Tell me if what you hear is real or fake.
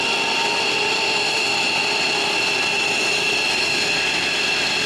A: real